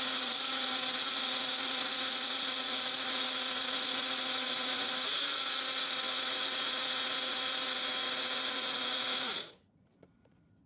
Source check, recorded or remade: remade